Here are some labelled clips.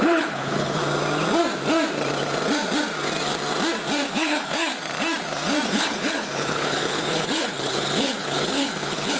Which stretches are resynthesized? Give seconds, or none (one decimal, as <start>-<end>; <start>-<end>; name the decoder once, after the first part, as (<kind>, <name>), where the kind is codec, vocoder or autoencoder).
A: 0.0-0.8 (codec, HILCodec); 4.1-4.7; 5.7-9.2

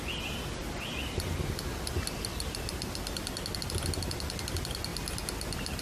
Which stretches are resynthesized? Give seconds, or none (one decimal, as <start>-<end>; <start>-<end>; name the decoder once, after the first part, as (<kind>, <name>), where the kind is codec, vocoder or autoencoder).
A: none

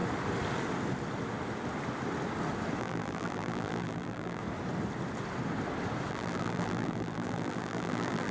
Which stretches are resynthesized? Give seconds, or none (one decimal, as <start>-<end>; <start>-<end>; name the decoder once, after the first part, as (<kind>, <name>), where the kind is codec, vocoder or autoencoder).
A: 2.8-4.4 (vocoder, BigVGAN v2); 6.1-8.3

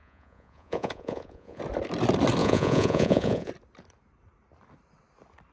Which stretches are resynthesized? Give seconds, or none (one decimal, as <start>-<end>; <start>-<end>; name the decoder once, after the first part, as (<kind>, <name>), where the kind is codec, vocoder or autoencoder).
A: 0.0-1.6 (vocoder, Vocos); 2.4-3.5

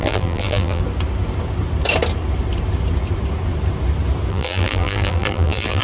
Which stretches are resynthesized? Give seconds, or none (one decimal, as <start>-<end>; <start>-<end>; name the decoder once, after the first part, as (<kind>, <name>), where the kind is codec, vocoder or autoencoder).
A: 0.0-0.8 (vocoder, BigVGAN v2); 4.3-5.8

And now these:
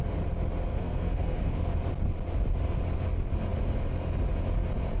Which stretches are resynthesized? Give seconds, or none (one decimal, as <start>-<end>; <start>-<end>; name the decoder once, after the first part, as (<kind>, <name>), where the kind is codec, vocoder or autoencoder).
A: 0.7-1.6 (codec, SNAC)

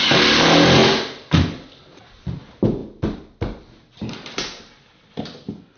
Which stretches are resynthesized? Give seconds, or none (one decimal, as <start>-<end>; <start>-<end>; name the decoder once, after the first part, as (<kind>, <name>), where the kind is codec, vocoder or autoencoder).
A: none

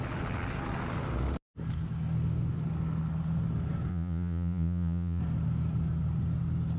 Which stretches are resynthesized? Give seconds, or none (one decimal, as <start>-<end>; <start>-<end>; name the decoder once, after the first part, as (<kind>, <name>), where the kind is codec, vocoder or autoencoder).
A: 3.9-5.2 (vocoder, Vocos)